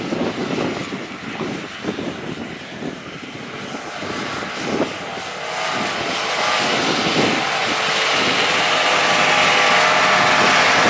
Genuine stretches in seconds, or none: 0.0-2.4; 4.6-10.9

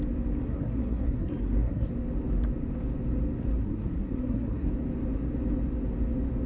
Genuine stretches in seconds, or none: 0.0-0.4; 1.9-3.6; 4.7-6.5

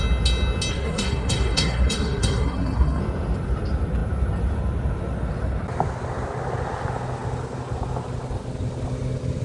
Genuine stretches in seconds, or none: 0.0-0.7; 3.0-9.4

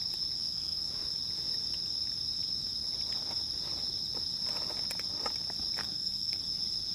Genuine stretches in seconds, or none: 0.0-0.4; 0.9-5.8; 6.4-6.9

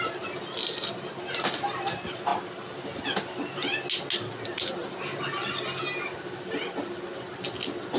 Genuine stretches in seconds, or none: 0.0-8.0

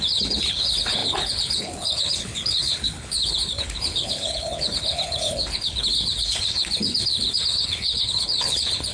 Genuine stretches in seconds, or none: none

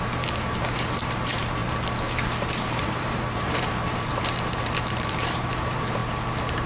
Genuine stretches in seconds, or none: none

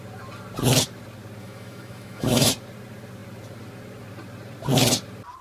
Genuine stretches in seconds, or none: 0.0-1.4; 2.5-5.4